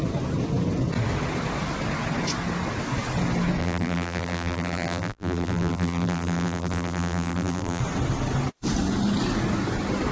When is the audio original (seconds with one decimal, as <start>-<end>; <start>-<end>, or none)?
0.0-3.6; 7.8-10.1